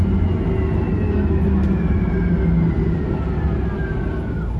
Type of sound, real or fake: real